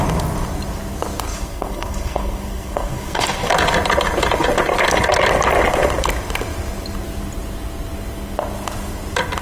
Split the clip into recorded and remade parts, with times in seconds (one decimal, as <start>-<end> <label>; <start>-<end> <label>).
0.0-1.3 recorded; 1.3-3.5 remade; 3.5-9.4 recorded